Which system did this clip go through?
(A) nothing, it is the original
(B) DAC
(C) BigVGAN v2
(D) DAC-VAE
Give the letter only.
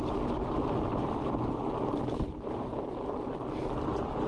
A